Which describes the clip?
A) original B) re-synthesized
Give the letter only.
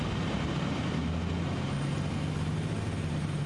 A